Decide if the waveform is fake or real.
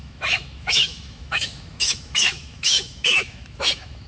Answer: fake